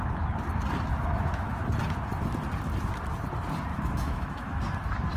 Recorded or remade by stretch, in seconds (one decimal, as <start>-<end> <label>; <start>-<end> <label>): 0.0-0.9 recorded; 0.9-1.7 remade; 1.7-3.7 recorded; 3.7-4.6 remade; 4.6-5.2 recorded